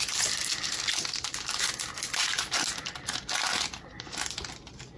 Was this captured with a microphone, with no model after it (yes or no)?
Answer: yes